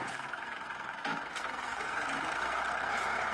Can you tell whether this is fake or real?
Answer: fake